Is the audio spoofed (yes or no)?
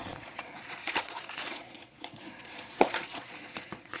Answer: yes